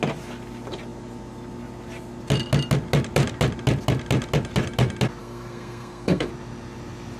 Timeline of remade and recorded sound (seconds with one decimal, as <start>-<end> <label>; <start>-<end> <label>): 0.0-5.2 recorded; 5.2-6.3 remade; 6.3-7.2 recorded